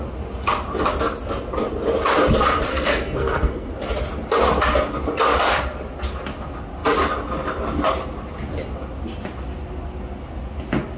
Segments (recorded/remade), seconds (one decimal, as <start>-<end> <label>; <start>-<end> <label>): 0.0-2.7 recorded; 2.7-3.7 remade; 3.7-11.0 recorded